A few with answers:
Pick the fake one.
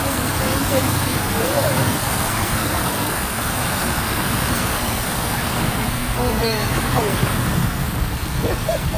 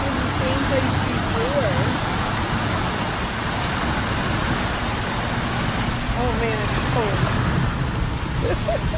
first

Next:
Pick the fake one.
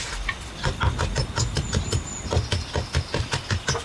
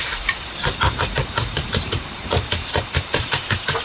second